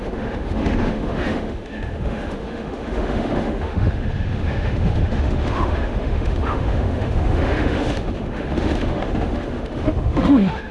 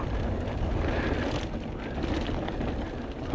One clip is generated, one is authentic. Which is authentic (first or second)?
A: second